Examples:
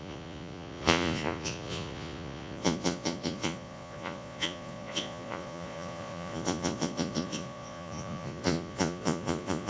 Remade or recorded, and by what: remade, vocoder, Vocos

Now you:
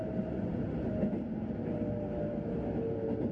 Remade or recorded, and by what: recorded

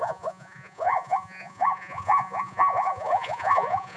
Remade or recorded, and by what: remade, vocoder, Vocos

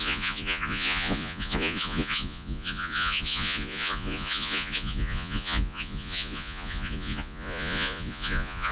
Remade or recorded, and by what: remade, vocoder, Vocos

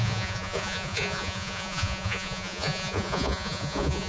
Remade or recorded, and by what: remade, vocoder, Vocos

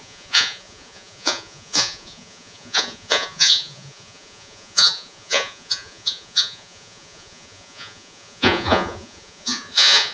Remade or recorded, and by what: remade, vocoder, Vocos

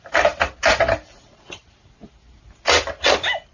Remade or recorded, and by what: recorded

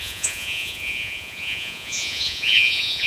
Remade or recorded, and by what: remade, vocoder, Vocos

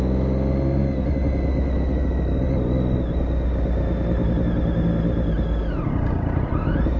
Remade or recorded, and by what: recorded